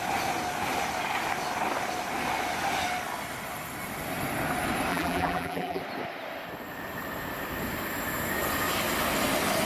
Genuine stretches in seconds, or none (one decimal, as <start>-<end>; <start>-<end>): 0.0-4.9; 5.8-9.7